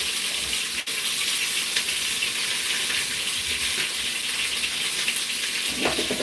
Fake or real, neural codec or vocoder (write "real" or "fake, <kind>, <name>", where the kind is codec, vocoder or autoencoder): real